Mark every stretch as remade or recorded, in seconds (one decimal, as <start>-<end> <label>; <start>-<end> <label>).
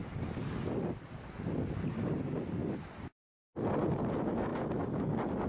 0.0-5.5 recorded